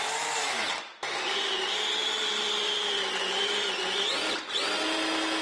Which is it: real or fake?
real